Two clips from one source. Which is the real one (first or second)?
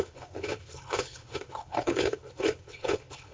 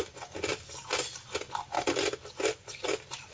second